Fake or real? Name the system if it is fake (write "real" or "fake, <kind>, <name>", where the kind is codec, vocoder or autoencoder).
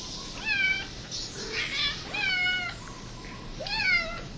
real